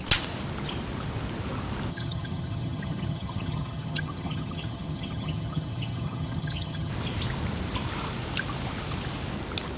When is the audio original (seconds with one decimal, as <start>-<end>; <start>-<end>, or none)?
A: 0.0-1.9; 6.9-9.8